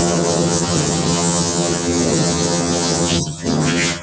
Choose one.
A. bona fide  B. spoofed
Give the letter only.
B